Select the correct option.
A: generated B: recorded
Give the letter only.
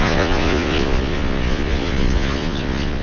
A